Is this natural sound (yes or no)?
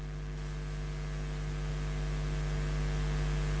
yes